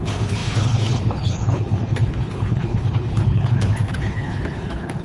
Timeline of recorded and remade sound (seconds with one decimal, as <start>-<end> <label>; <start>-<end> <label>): 0.0-5.0 remade